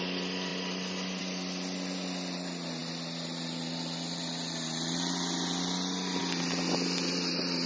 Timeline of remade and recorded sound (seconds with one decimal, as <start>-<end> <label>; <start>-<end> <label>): 0.0-7.7 recorded